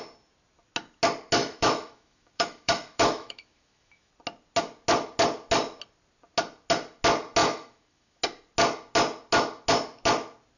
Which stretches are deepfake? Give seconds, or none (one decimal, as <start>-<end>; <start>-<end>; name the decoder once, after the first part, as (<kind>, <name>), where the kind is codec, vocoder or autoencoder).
1.4-4.1 (autoencoder, DAC-VAE); 7.4-8.2